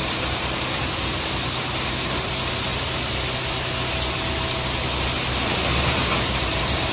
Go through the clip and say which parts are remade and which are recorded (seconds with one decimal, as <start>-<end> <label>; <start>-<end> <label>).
0.0-0.8 remade; 0.8-6.9 recorded